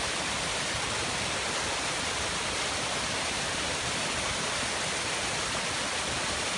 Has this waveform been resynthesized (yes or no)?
no